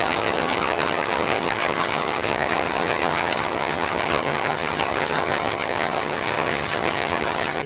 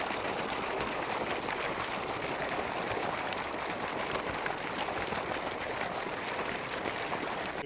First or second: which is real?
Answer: second